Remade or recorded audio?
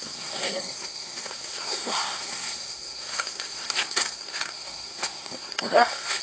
remade